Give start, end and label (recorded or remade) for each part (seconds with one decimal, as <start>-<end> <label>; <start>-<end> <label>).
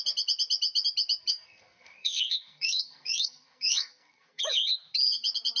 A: 0.0-1.3 recorded; 1.3-4.4 remade; 4.4-5.6 recorded